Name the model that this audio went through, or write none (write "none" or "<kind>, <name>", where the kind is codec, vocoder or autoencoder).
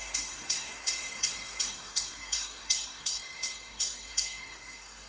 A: codec, SNAC